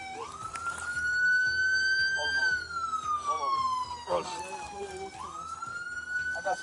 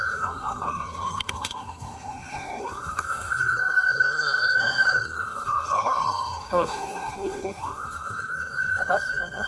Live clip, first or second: first